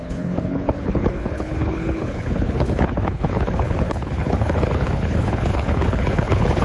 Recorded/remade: remade